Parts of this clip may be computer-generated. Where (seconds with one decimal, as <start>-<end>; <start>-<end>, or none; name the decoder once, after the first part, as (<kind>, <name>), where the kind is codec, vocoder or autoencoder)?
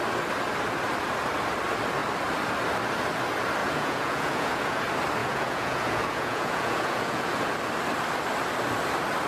3.6-4.8 (vocoder, Vocos); 5.2-7.4